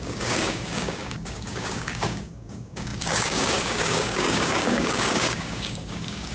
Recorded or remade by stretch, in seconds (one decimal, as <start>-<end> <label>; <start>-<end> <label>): 0.0-6.3 remade